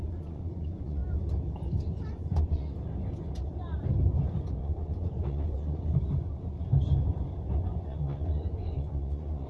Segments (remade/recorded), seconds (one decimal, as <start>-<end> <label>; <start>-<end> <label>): 0.0-1.0 remade; 1.0-2.1 recorded; 2.1-2.7 remade; 2.7-4.6 recorded; 4.6-6.0 remade; 6.0-7.6 recorded; 7.6-9.5 remade